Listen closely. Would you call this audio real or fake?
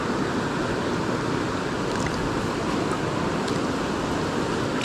real